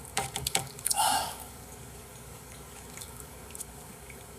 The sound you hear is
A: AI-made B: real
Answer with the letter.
A